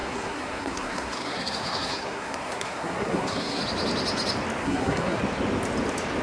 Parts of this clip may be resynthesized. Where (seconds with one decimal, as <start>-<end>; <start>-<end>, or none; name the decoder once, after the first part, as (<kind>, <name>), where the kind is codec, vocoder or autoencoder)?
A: 0.0-3.6 (codec, SNAC); 4.6-5.2

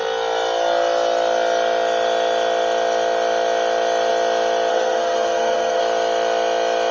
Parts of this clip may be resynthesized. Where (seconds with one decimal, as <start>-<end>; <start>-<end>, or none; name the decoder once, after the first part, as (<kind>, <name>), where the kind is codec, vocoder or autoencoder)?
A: 4.7-5.8 (codec, SNAC)

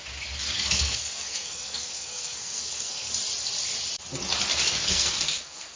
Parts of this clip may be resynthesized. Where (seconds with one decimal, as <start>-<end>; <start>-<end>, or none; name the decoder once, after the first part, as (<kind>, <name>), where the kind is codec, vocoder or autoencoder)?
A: 0.5-3.1 (codec, SNAC); 4.5-5.8

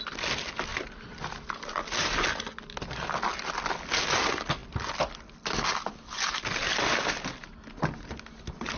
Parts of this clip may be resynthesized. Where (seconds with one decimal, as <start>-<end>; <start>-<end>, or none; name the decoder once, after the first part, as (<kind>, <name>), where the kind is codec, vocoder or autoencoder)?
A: none

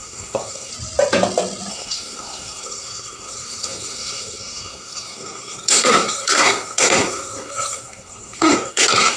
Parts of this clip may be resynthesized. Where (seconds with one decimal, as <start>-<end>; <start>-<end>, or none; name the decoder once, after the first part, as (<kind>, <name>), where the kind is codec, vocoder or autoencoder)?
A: 0.0-0.7 (codec, SNAC); 1.7-9.2

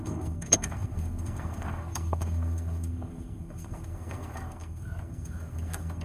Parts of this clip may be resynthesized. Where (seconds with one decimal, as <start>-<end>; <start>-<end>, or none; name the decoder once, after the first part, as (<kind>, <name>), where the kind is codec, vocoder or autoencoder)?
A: 0.0-6.0 (codec, SNAC)

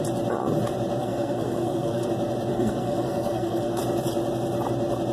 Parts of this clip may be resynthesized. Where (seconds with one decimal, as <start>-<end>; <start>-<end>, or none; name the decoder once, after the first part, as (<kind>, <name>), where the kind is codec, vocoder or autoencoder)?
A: 1.0-2.1 (codec, SNAC); 2.5-3.8

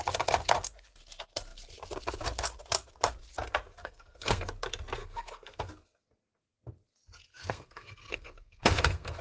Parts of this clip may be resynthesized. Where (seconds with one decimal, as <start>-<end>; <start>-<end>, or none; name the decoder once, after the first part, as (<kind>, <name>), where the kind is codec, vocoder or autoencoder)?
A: 3.8-4.5 (codec, SNAC); 5.0-5.7; 7.3-9.2